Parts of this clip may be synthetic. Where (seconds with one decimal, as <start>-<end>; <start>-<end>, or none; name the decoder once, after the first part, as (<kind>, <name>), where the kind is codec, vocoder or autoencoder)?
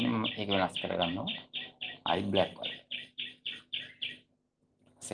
0.8-3.6 (vocoder, BigVGAN v2)